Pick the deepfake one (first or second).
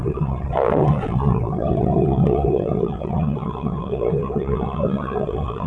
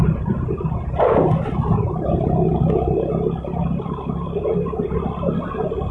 first